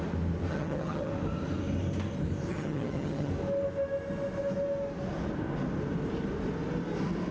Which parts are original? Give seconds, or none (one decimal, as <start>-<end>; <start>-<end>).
0.0-0.5; 1.1-2.5; 3.3-7.3